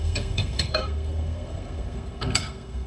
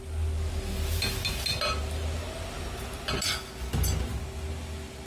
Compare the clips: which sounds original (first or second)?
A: second